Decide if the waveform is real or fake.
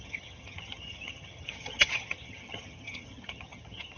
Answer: fake